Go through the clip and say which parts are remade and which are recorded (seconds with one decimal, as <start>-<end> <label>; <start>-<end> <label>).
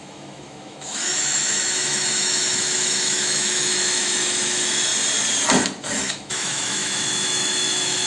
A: 0.0-4.9 remade; 4.9-5.8 recorded; 5.8-8.1 remade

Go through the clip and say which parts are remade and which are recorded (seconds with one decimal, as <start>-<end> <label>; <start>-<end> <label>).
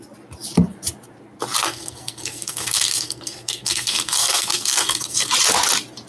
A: 0.0-1.6 recorded; 1.6-5.3 remade; 5.3-6.1 recorded